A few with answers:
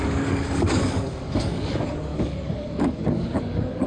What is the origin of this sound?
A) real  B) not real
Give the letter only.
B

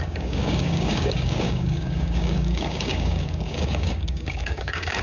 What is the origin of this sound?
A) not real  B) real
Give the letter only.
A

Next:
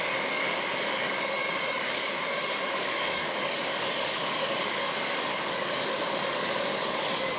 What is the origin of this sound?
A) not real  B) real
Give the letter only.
A